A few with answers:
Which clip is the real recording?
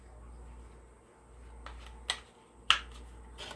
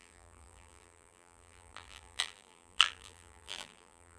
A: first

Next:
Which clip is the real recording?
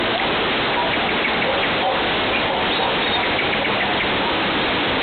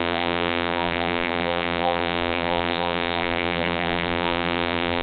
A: first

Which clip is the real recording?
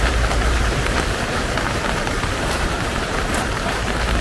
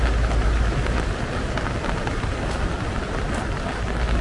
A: second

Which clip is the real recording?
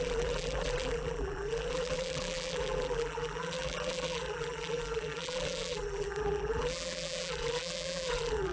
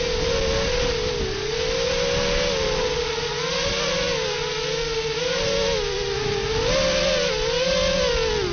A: second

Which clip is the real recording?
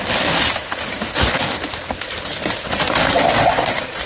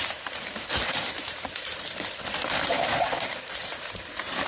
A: first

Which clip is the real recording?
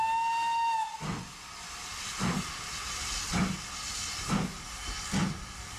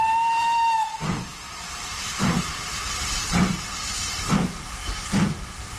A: first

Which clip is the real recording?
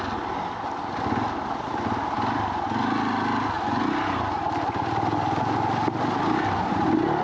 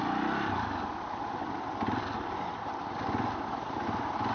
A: first